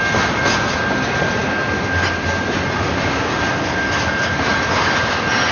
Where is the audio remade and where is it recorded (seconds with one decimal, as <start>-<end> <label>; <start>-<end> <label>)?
0.0-5.5 recorded

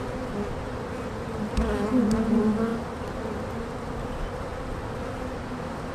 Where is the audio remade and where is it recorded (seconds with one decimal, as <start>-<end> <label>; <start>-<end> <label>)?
0.0-5.9 recorded

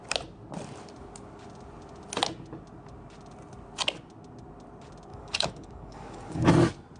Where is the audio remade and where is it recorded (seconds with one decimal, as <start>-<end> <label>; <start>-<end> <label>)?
0.0-5.1 recorded; 5.1-6.5 remade; 6.5-7.0 recorded

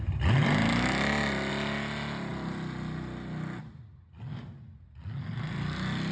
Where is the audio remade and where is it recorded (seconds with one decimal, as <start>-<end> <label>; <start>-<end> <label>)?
0.0-6.1 recorded

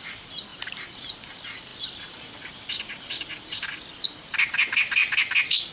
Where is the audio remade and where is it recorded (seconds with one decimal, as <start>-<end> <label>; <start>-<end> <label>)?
0.0-5.7 recorded